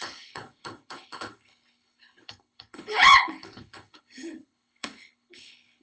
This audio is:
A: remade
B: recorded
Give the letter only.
A